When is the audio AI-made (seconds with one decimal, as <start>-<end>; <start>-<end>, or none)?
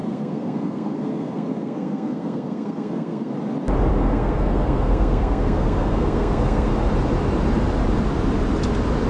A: 0.0-3.3; 3.9-6.7